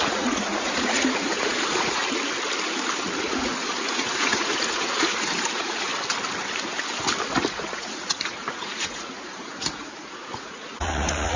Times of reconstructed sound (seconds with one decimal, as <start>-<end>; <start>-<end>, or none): 0.0-2.0; 3.2-5.9; 7.5-11.4